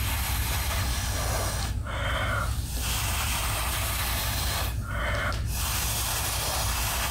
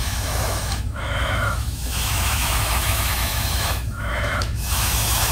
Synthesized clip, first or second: second